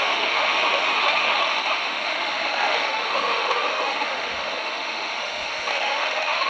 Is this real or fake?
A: fake